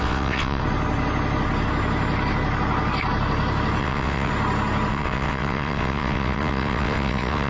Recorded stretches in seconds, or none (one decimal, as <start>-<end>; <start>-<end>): 0.6-3.8; 4.3-4.9